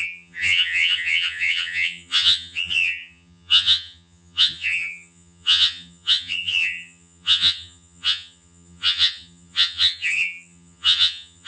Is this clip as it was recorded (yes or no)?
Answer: no